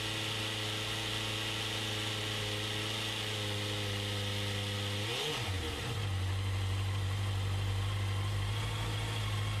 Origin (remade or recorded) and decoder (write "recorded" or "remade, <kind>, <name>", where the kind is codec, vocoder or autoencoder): recorded